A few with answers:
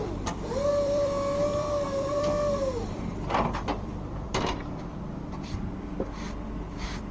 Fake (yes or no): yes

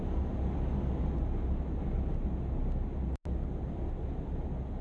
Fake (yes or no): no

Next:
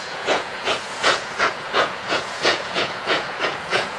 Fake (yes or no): yes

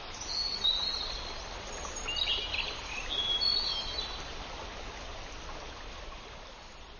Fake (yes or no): no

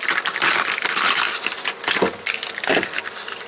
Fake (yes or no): no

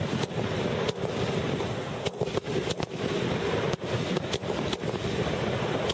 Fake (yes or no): no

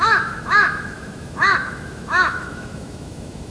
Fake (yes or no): yes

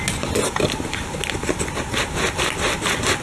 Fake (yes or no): no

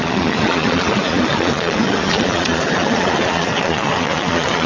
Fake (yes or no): yes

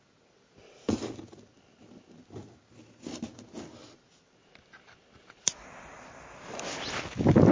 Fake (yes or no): no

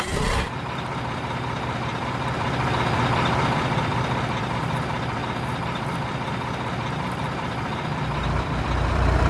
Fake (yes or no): yes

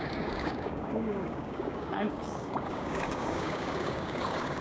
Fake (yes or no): yes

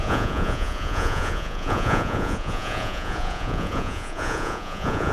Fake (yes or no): yes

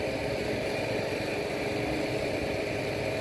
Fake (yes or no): no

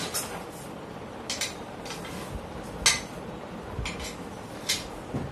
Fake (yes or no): no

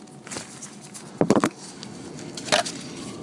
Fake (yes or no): no